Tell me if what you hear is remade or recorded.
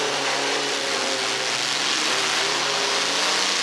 recorded